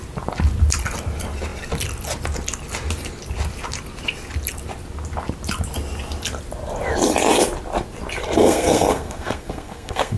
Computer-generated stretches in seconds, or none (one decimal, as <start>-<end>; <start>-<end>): 8.4-10.2